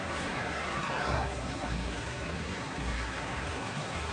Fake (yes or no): yes